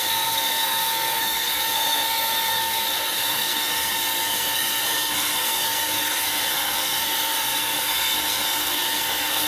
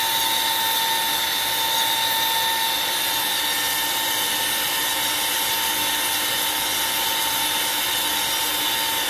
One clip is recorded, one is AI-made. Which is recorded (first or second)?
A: second